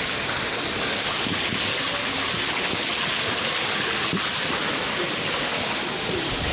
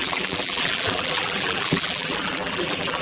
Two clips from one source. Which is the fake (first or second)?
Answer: second